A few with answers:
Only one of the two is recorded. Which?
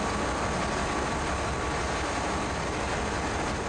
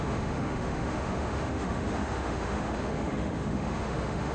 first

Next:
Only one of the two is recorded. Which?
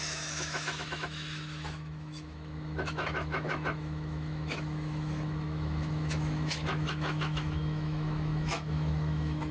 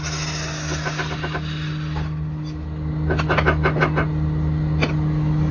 second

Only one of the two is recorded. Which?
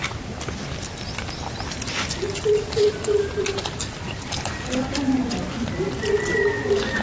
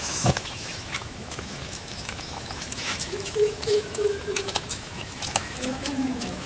first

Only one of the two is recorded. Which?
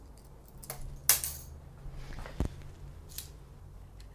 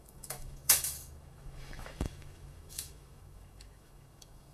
first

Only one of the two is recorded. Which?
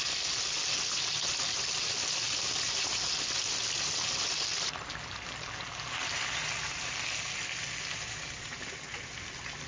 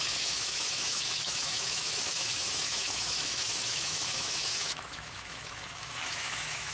first